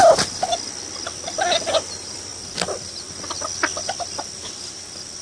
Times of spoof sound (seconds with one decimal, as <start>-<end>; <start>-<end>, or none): none